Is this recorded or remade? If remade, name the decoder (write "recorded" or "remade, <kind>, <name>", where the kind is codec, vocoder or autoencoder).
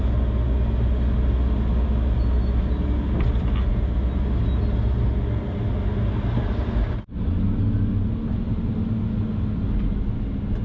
recorded